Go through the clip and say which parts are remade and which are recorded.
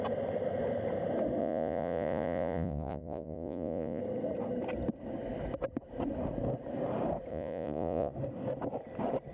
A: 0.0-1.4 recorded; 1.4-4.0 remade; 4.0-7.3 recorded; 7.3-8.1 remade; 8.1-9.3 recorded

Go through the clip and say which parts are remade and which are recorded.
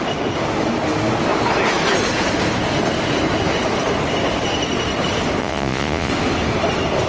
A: 0.0-5.4 recorded; 5.4-6.1 remade; 6.1-7.1 recorded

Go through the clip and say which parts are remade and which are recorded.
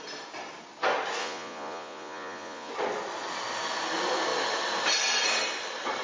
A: 0.0-1.2 recorded; 1.2-2.7 remade; 2.7-6.0 recorded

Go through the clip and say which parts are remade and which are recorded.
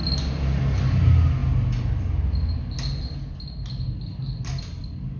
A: 0.0-5.2 recorded